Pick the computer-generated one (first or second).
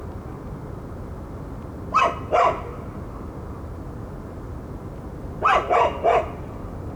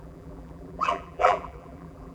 second